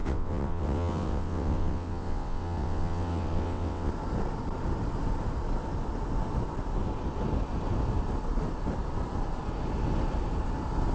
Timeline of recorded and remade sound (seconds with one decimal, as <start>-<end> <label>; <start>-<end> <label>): 0.0-3.9 remade; 3.9-10.9 recorded